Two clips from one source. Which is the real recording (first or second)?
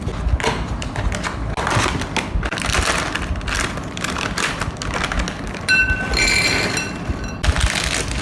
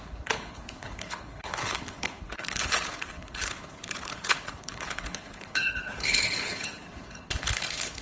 first